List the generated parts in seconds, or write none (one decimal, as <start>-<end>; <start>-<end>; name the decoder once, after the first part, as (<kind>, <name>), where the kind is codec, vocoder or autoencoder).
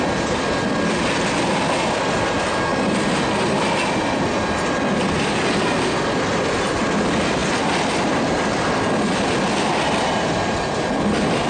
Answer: none